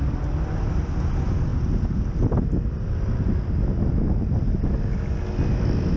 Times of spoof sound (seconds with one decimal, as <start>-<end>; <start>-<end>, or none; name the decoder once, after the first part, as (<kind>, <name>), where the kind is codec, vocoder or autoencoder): none